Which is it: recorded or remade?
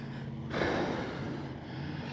recorded